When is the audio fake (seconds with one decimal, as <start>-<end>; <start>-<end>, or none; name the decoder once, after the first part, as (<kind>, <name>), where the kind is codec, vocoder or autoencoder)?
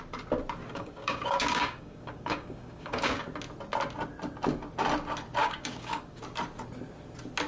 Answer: 0.6-3.2 (codec, DAC); 5.4-6.2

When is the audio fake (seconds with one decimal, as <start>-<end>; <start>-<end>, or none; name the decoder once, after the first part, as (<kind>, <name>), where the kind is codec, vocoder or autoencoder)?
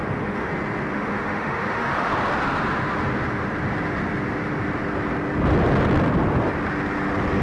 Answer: 0.0-0.5 (autoencoder, DAC-VAE); 0.9-2.1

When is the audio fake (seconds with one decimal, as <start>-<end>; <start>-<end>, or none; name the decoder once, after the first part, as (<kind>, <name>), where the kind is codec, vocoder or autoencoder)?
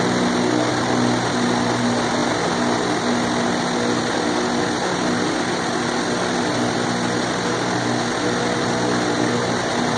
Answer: none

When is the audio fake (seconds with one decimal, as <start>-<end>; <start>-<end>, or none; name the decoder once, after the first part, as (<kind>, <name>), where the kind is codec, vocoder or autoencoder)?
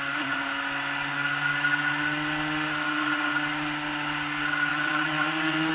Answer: 4.7-5.7 (vocoder, WaveNeXt)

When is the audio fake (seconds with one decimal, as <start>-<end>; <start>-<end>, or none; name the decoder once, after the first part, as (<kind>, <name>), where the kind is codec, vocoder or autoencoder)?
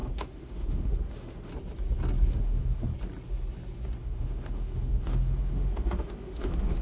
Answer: 0.0-1.5 (autoencoder, DAC-VAE); 2.3-2.9; 4.0-6.8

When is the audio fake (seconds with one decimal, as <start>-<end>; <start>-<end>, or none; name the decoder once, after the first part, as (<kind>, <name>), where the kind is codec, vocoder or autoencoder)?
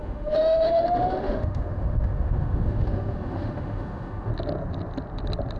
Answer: 0.0-4.3 (autoencoder, DAC-VAE)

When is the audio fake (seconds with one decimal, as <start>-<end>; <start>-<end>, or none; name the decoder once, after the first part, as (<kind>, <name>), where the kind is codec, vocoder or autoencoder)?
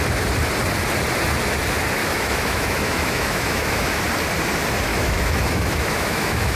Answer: 2.0-4.0 (autoencoder, DAC-VAE); 4.9-6.6